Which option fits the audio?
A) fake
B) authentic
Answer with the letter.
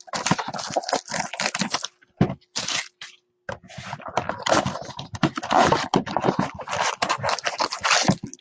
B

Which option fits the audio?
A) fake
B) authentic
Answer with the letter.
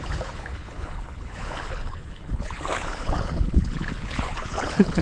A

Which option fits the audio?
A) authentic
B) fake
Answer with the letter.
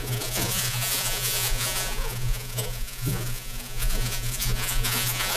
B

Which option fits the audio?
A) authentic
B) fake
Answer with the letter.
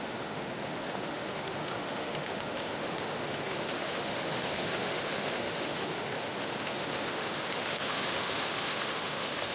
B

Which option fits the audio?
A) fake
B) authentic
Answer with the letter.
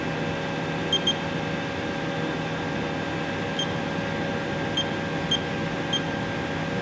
B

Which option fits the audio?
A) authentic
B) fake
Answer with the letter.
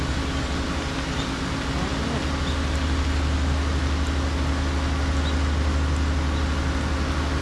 A